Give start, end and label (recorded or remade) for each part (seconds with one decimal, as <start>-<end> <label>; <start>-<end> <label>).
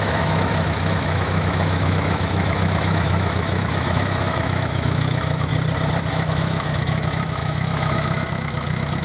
0.0-5.5 remade; 5.5-6.1 recorded; 6.1-9.0 remade